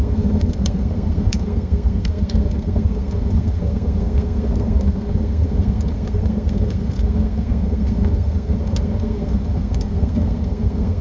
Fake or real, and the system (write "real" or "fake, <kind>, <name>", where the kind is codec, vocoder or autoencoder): fake, codec, SNAC